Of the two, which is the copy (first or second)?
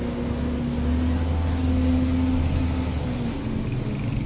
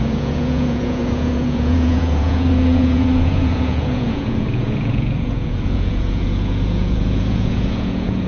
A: second